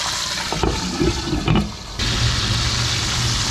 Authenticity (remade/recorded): recorded